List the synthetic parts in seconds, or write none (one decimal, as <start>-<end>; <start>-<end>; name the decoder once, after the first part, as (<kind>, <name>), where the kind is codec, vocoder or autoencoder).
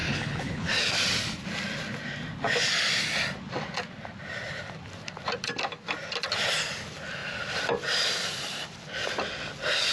0.0-0.8 (codec, HILCodec)